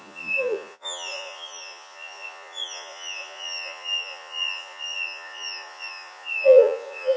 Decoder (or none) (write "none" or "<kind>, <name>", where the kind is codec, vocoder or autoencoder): vocoder, Vocos